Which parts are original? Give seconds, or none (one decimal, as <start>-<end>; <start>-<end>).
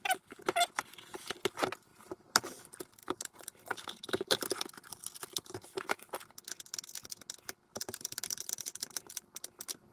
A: 0.0-1.9; 2.5-3.0; 4.4-7.7; 9.3-9.9